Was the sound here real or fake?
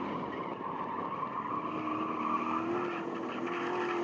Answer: real